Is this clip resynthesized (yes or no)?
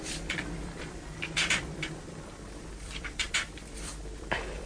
yes